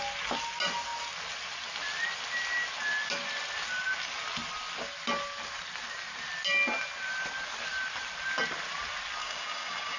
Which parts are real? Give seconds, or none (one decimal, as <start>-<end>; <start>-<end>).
0.0-9.2